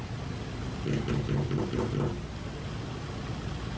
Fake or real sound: real